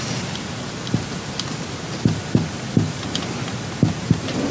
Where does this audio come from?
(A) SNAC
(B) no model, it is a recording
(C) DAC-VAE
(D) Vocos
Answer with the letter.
B